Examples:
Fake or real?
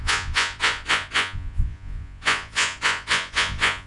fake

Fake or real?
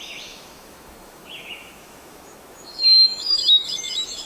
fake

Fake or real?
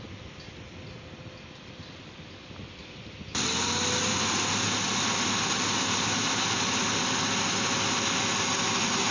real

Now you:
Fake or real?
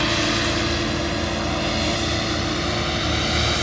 real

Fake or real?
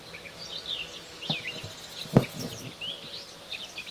real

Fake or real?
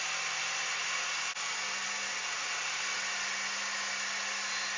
real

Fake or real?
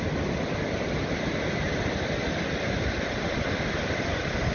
real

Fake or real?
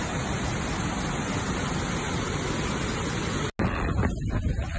real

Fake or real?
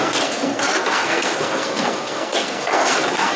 fake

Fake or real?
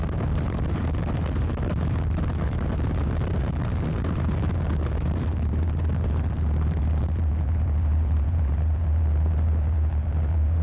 fake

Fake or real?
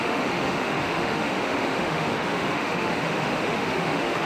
fake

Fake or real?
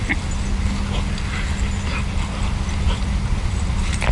real